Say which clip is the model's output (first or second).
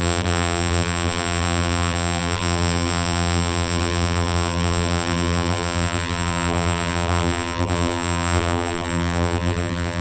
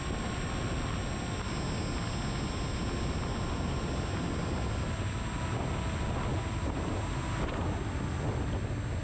first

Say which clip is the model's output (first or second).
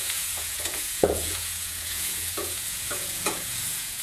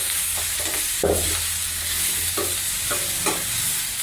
first